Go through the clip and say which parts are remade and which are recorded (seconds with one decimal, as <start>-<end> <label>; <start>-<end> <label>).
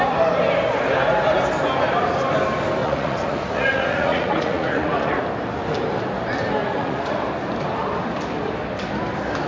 0.0-2.8 recorded; 2.8-5.2 remade; 5.2-6.6 recorded; 6.6-7.2 remade; 7.2-9.5 recorded